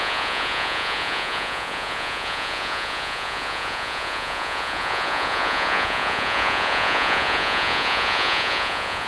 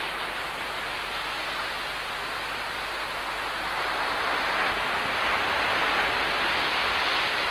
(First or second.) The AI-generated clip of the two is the first